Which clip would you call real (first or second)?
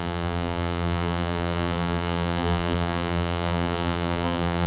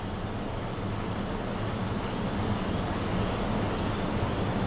second